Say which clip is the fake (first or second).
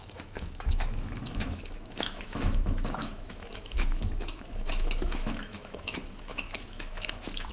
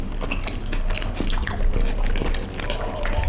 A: first